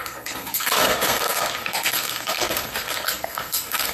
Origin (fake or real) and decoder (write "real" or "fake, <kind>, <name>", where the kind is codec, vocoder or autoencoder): fake, codec, SNAC